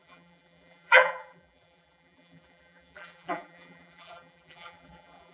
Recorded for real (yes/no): no